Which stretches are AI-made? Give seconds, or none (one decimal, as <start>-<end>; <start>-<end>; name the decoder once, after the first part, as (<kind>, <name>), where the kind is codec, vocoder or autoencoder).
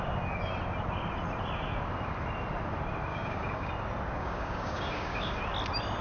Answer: 3.1-3.7 (codec, DAC); 4.2-5.4